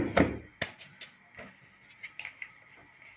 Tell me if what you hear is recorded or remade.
recorded